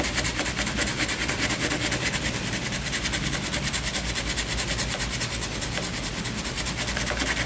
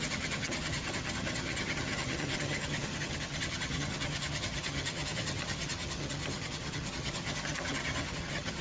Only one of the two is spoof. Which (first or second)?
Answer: second